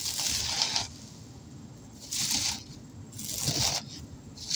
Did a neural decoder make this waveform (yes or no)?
no